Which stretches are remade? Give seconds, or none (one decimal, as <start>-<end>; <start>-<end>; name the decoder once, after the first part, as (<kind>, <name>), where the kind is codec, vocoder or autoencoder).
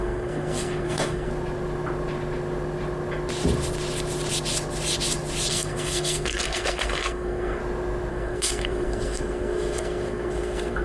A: 0.0-1.3 (codec, SNAC); 5.5-7.6; 8.1-10.8